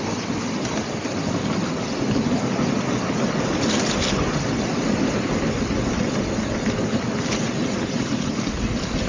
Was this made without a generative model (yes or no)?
yes